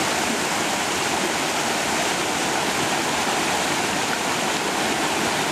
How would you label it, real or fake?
real